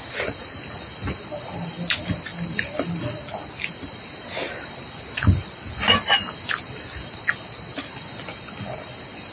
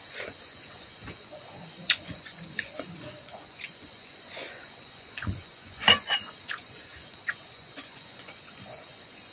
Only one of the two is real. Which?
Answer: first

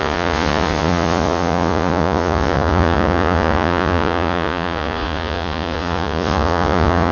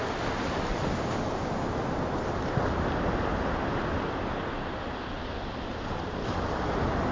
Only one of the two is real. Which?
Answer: second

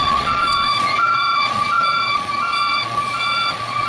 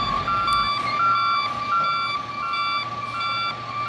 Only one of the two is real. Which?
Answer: second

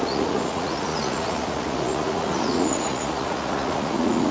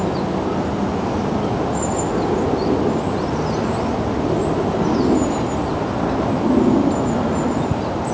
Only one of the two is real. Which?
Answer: second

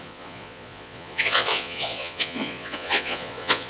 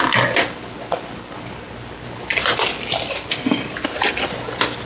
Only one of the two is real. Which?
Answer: second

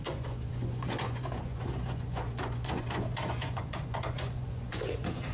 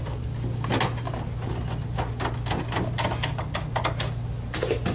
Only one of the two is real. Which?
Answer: second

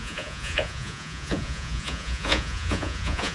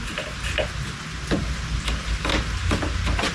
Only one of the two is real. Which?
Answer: second